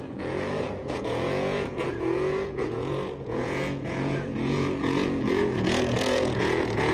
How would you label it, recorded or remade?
remade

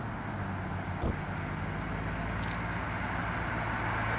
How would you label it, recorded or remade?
recorded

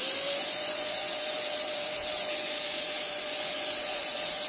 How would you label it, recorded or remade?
remade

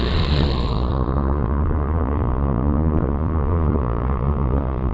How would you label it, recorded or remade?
remade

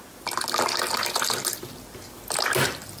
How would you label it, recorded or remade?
recorded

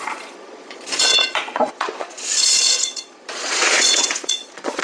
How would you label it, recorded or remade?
remade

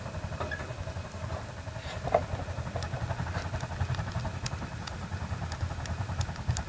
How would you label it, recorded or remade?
recorded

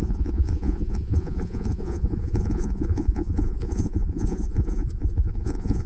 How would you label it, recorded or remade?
remade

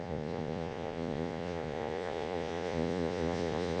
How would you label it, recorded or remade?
remade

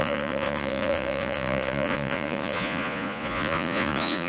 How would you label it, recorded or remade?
remade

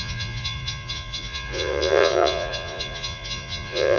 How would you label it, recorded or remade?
remade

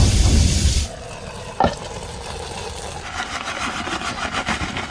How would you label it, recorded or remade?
recorded